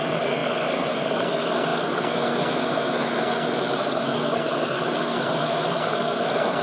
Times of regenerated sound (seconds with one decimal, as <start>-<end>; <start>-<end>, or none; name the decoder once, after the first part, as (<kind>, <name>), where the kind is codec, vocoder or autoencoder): 0.0-6.6 (codec, SNAC)